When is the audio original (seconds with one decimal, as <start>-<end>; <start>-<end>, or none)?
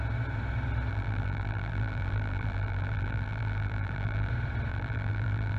0.0-0.9; 4.3-4.7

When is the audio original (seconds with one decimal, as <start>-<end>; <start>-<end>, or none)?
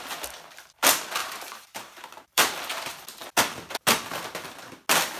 0.0-1.2; 2.5-5.2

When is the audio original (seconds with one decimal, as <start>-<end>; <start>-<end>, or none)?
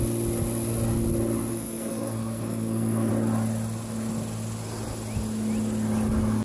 0.0-1.5; 3.1-6.4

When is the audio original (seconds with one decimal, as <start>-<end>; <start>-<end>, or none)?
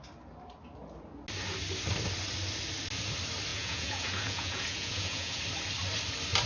0.0-3.5; 5.4-6.5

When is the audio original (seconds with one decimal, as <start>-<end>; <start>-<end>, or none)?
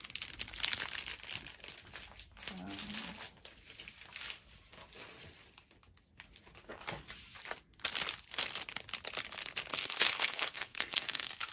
0.0-9.7